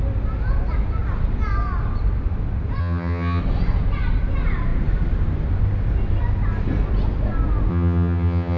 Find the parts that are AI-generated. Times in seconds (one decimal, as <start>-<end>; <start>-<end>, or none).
2.8-3.4; 7.7-8.6